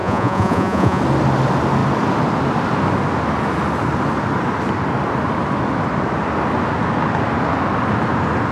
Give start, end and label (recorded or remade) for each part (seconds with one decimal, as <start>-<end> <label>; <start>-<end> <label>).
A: 0.0-1.0 remade; 1.0-8.5 recorded